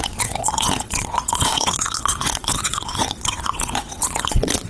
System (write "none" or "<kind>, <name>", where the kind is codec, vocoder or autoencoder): vocoder, WaveNeXt